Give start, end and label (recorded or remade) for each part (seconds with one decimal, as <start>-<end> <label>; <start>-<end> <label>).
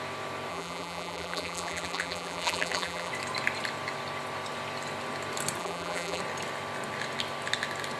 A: 0.0-0.5 recorded; 0.5-3.1 remade; 3.1-5.6 recorded; 5.6-6.2 remade; 6.2-8.0 recorded